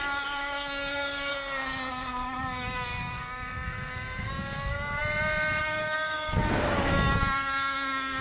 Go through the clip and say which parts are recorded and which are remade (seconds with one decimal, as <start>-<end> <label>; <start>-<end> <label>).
0.0-1.3 remade; 1.3-1.9 recorded; 1.9-5.0 remade; 5.0-5.6 recorded; 5.6-8.2 remade